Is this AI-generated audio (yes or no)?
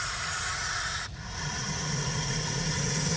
yes